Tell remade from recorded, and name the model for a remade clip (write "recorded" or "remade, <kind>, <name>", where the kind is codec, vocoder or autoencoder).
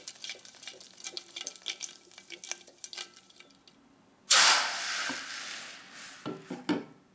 recorded